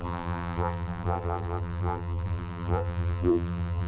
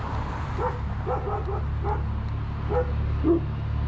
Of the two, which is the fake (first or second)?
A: first